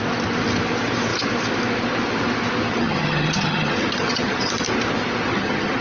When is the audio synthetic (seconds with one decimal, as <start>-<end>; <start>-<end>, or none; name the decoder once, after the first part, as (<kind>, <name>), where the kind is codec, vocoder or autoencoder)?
2.7-4.5 (vocoder, HiFi-GAN); 5.3-5.8